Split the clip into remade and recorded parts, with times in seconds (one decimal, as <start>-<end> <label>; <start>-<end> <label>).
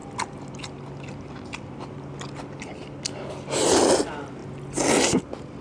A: 0.0-5.6 recorded